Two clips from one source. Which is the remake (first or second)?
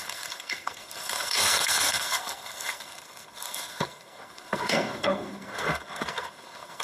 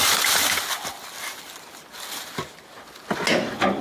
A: first